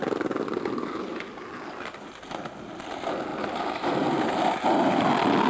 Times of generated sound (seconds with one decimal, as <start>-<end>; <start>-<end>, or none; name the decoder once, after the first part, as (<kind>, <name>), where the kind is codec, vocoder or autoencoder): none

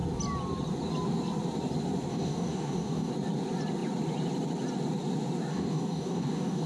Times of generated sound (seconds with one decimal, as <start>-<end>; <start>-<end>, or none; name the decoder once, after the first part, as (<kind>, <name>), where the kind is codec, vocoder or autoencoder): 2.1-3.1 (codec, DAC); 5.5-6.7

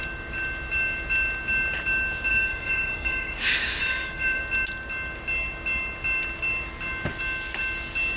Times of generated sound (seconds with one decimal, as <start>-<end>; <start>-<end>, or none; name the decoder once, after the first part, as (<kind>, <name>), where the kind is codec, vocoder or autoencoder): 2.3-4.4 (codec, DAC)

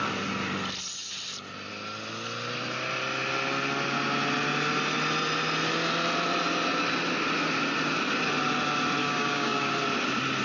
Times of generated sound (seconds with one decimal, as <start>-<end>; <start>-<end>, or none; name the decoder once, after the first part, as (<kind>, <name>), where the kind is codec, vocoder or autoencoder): 9.0-9.7 (codec, DAC)

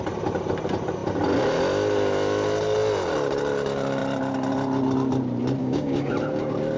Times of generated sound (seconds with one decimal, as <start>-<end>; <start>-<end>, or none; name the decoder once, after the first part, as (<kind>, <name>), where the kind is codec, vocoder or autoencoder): 5.6-6.1 (codec, DAC)

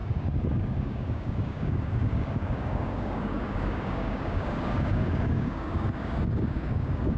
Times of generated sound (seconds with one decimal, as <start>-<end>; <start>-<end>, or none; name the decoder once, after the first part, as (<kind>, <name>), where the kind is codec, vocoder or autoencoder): 0.0-7.2 (codec, DAC)

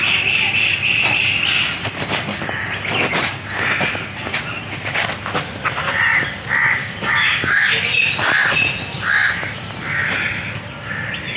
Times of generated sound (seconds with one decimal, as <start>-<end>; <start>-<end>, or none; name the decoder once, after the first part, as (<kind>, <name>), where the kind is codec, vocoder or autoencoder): 6.8-7.7 (codec, DAC)

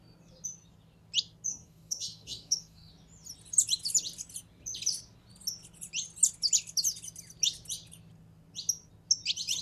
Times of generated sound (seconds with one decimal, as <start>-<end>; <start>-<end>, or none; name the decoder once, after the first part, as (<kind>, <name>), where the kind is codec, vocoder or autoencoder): 1.5-2.9 (codec, DAC)